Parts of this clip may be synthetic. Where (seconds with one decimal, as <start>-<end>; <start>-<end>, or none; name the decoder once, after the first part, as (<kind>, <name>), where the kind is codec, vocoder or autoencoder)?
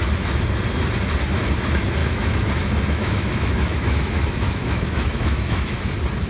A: 2.0-5.8 (autoencoder, DAC-VAE)